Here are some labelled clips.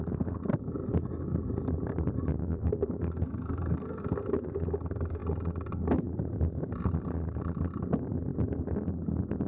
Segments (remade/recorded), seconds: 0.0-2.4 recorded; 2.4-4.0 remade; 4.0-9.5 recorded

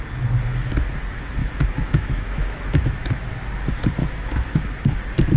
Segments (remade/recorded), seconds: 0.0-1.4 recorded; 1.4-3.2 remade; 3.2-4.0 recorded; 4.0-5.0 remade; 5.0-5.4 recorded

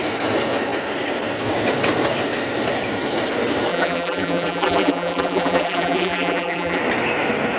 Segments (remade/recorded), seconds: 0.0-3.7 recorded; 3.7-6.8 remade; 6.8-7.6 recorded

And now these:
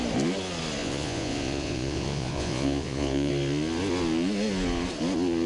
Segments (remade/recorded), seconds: 0.0-0.8 recorded; 0.8-3.3 remade; 3.3-5.5 recorded

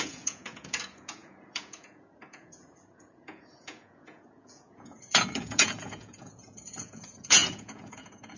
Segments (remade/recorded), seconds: 0.0-8.4 remade

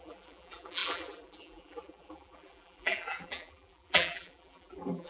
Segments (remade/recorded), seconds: 0.0-5.1 remade